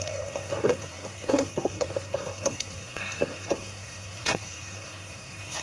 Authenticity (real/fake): fake